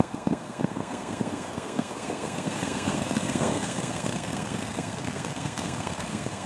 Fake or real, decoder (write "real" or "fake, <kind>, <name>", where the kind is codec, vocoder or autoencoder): fake, codec, SNAC